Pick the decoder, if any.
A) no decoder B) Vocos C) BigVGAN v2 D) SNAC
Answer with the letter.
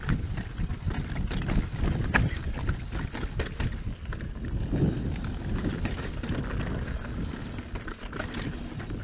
A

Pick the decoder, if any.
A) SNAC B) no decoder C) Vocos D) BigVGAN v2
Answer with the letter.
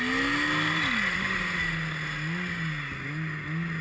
B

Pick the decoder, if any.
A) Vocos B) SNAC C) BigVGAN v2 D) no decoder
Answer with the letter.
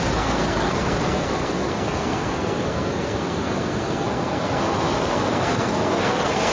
B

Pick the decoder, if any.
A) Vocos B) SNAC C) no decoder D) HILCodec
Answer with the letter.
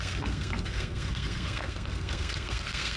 B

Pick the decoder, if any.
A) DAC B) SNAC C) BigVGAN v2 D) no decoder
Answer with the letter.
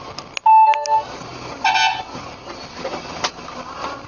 D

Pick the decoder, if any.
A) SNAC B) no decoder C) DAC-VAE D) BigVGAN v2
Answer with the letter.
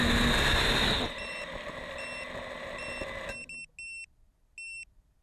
B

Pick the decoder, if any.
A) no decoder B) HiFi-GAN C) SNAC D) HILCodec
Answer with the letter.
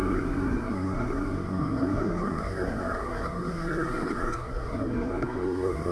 C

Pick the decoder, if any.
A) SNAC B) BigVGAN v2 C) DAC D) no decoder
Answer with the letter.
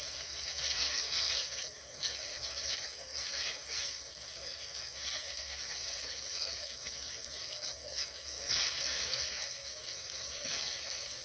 A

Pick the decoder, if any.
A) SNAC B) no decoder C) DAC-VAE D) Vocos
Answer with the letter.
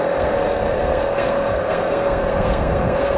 A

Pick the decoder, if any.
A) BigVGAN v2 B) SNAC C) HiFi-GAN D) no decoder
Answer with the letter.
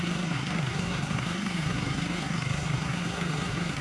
B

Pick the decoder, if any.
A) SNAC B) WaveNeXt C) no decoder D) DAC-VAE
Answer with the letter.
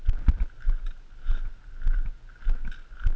C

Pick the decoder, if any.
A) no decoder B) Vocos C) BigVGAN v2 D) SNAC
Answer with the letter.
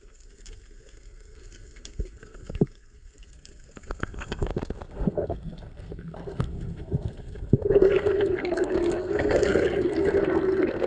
D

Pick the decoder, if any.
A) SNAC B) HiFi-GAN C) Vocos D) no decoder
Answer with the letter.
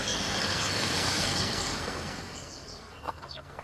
A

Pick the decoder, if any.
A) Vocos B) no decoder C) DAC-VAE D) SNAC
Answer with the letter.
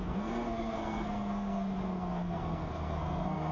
D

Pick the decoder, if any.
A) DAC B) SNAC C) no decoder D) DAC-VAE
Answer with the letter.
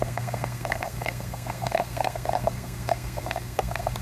B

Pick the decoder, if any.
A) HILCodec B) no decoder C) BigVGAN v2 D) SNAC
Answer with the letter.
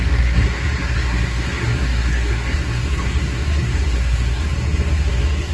D